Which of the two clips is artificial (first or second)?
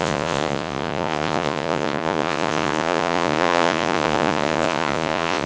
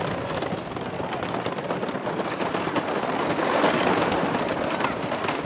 first